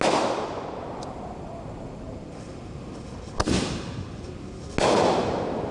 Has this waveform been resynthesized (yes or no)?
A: no